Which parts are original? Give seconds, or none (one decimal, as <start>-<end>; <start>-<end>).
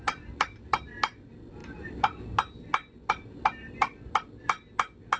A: 0.0-5.2